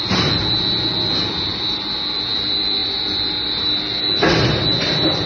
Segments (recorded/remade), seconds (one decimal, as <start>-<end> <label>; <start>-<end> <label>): 0.0-5.3 recorded